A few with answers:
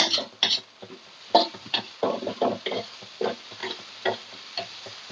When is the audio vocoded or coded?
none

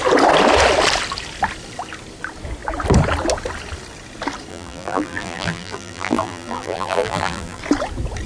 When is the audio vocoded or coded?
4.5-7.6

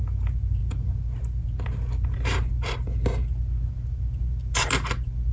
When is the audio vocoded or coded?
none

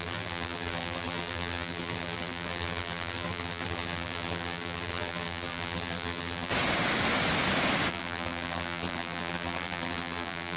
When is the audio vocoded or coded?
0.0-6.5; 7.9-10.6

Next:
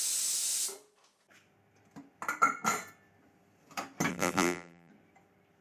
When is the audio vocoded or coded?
4.1-4.9

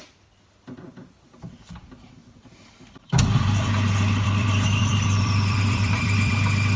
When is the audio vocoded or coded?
2.2-6.3

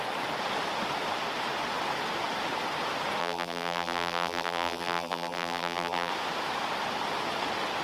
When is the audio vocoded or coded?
3.2-6.1